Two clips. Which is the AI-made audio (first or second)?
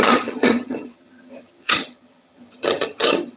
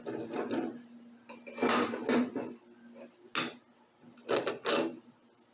first